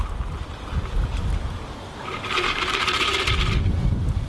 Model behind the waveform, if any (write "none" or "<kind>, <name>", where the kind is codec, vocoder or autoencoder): vocoder, BigVGAN v2